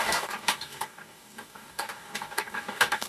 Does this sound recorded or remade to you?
remade